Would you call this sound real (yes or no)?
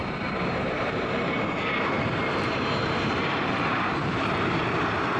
no